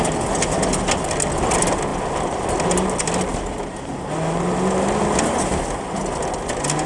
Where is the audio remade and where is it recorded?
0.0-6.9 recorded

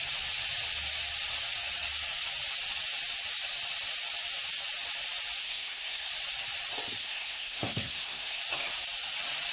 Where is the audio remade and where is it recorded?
0.0-5.4 recorded; 5.4-6.1 remade; 6.1-7.0 recorded; 7.0-8.4 remade; 8.4-9.5 recorded

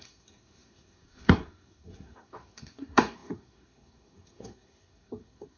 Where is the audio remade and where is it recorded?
0.0-5.6 remade

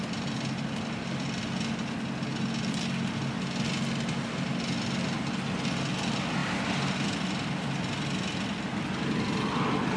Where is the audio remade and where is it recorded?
0.0-10.0 recorded